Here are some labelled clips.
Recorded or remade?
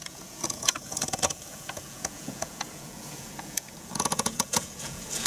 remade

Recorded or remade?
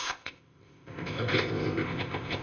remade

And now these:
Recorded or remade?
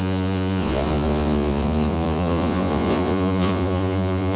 remade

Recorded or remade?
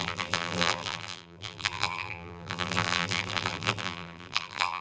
remade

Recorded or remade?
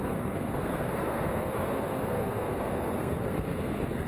remade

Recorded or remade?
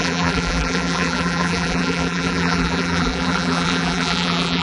remade